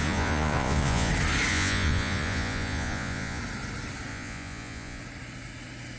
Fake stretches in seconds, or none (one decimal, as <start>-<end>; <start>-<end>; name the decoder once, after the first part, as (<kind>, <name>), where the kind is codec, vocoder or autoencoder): 0.0-1.1 (vocoder, Vocos); 1.5-3.4; 4.1-5.0